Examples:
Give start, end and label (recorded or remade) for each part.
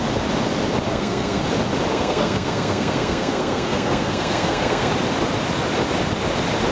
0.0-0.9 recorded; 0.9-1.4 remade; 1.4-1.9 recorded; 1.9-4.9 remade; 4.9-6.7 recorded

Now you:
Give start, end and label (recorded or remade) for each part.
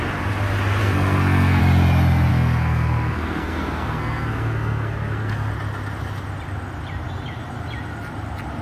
0.0-0.8 recorded; 0.8-1.6 remade; 1.6-2.3 recorded; 2.3-5.5 remade; 5.5-8.6 recorded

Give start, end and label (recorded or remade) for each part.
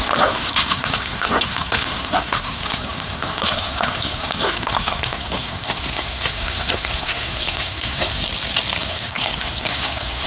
0.0-8.2 remade; 8.2-8.8 recorded; 8.8-10.3 remade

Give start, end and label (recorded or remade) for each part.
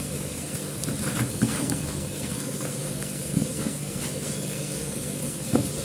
0.0-0.8 remade; 0.8-1.3 recorded; 1.3-5.8 remade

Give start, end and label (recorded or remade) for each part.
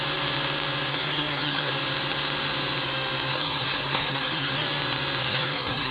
0.0-0.9 recorded; 0.9-1.7 remade; 1.7-3.3 recorded; 3.3-4.5 remade; 4.5-5.2 recorded; 5.2-5.9 remade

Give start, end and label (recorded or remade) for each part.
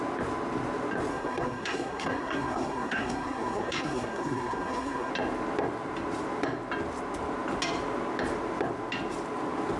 0.0-1.1 recorded; 1.1-5.1 remade; 5.1-9.8 recorded